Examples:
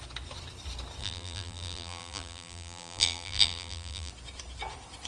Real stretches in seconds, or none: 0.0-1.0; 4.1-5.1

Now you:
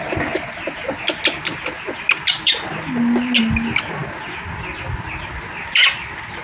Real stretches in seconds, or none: 0.0-6.4

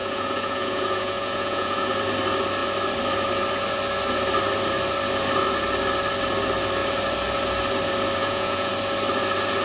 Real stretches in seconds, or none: 1.9-8.2; 8.7-9.6

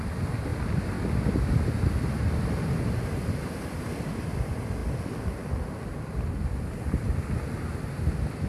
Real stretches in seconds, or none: 0.0-8.5

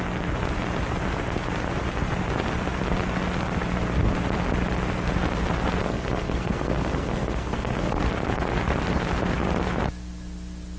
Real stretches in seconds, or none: 0.0-5.8; 8.0-10.8